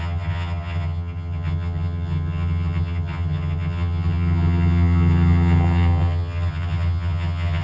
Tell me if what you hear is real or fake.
fake